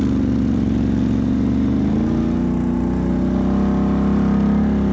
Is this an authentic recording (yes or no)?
yes